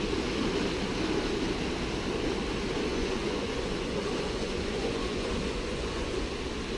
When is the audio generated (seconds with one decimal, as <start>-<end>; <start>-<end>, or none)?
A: 2.9-6.2